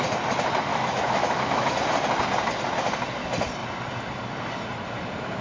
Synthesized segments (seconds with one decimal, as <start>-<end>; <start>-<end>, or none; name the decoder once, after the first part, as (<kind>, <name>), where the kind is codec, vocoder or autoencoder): 0.7-1.7 (autoencoder, DAC-VAE)